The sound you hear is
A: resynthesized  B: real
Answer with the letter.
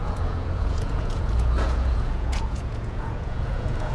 A